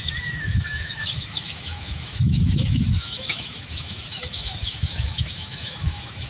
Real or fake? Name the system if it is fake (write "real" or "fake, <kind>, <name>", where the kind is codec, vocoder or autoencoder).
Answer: fake, autoencoder, DAC-VAE